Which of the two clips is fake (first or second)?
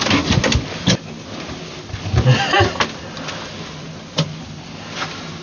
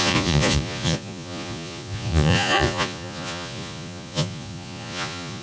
second